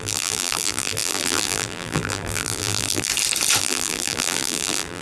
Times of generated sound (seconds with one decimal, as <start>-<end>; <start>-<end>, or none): 0.0-3.1; 3.6-5.0